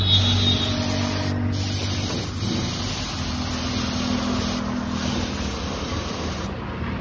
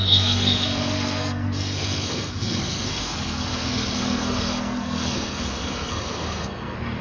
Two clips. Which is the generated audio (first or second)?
second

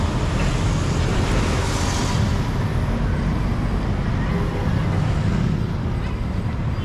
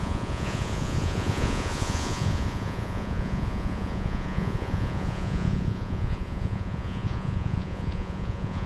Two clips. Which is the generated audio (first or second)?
second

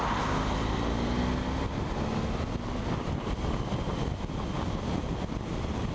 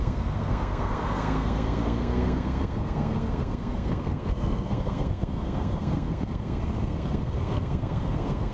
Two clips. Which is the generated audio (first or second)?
second